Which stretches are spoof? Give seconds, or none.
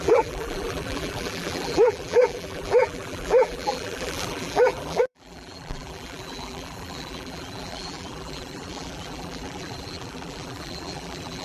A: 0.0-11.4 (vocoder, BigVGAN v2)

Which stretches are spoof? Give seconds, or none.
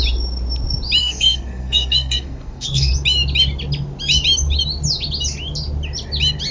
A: 1.0-2.9 (codec, SNAC)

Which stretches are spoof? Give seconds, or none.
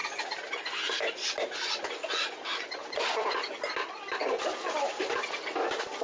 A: none